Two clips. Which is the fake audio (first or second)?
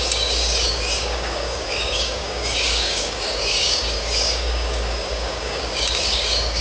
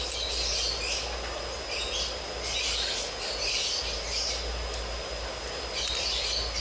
first